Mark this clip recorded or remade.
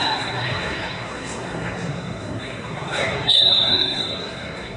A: remade